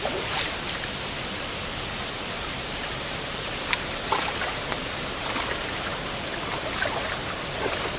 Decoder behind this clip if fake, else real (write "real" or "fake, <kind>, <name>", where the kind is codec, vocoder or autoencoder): real